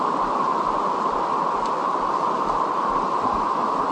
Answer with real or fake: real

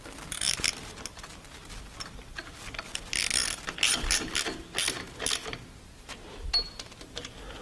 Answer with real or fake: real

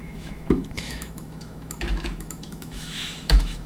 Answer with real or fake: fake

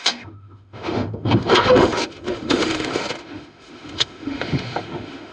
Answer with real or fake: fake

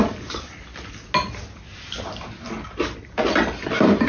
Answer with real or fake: real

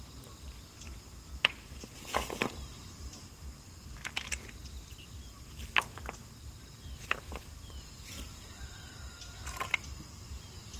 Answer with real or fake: real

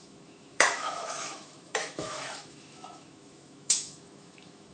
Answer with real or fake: fake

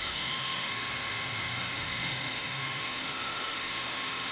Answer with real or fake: fake